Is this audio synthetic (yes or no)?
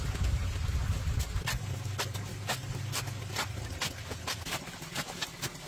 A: no